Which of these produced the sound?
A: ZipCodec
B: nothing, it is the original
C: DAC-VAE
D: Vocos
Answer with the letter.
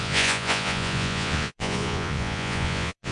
D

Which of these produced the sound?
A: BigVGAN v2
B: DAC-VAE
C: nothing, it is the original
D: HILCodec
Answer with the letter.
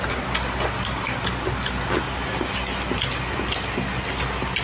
C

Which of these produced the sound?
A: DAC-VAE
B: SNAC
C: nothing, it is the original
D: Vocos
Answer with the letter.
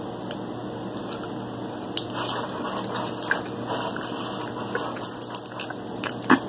C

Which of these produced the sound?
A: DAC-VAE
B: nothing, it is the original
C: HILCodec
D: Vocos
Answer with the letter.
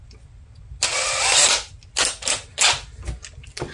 B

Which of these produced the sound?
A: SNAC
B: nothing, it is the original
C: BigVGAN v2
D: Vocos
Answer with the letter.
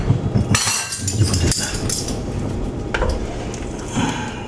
B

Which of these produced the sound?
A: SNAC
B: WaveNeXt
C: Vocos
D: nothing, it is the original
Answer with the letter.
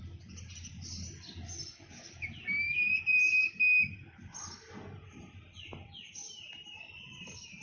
D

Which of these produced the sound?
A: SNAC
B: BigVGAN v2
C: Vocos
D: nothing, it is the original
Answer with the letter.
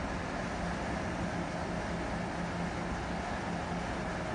D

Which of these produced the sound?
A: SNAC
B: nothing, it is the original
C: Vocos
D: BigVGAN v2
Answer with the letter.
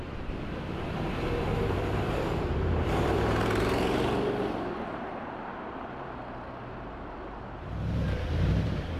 D